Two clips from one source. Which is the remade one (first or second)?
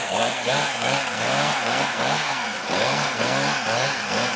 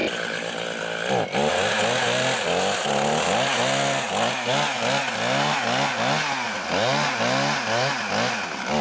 first